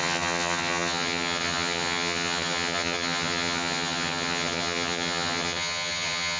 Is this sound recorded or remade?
remade